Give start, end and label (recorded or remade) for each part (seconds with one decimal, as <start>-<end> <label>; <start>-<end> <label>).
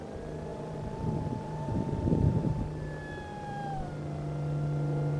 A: 0.0-0.5 recorded; 0.5-2.6 remade; 2.6-3.3 recorded; 3.3-3.9 remade; 3.9-5.2 recorded